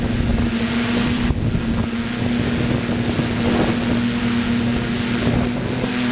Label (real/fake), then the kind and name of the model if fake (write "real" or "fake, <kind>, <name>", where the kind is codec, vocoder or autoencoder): real